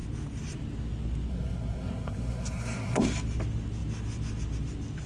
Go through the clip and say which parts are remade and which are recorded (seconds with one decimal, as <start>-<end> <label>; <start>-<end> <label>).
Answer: 0.0-1.3 recorded; 1.3-3.0 remade; 3.0-5.1 recorded